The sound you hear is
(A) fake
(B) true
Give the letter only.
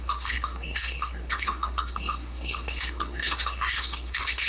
A